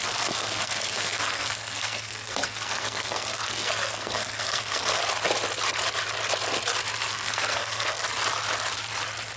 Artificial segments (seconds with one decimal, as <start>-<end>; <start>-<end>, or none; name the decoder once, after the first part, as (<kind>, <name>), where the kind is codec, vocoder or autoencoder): 0.0-5.0 (codec, SNAC); 7.1-8.0